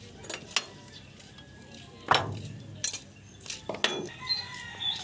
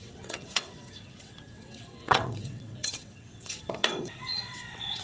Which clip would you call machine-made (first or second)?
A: second